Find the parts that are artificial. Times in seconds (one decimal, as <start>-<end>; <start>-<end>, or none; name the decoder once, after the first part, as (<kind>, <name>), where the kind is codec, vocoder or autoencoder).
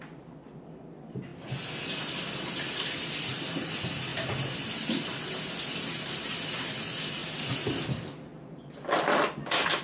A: 0.0-1.3 (vocoder, BigVGAN v2); 2.5-9.8